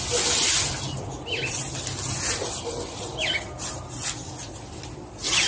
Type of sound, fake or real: real